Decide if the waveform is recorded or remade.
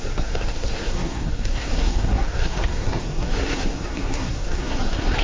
remade